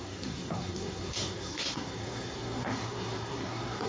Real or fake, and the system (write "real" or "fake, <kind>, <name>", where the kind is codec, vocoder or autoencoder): fake, codec, SNAC